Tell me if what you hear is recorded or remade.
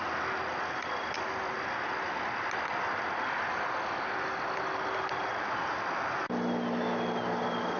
recorded